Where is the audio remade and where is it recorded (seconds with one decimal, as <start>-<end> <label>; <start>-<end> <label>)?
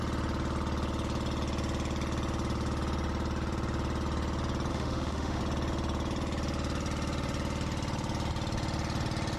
0.0-4.7 recorded; 4.7-5.4 remade; 5.4-9.4 recorded